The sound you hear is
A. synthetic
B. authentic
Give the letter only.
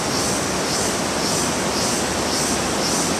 B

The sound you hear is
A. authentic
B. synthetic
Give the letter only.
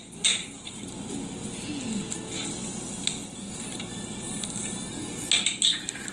A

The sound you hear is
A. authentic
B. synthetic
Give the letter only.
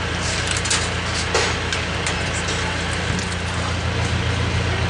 A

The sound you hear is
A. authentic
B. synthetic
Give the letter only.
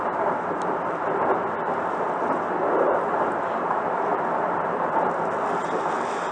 A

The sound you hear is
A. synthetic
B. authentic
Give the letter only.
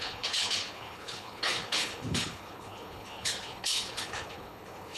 A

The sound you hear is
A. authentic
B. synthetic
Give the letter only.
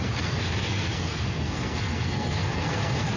B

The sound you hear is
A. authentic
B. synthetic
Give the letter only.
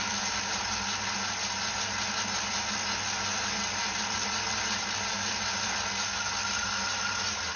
A